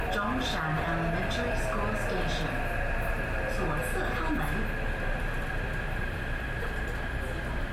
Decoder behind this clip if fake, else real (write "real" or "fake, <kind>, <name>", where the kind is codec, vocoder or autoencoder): real